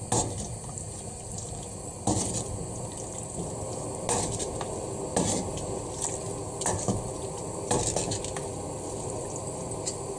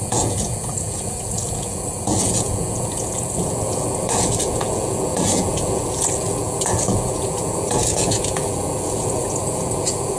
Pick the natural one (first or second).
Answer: first